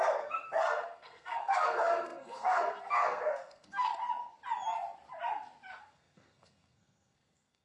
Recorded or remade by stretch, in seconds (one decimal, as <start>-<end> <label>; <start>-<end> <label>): 0.0-3.9 remade; 3.9-5.8 recorded; 5.8-7.6 remade